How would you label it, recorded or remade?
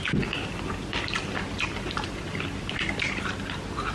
recorded